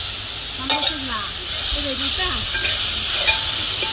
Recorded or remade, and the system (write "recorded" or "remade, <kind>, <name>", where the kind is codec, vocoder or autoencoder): recorded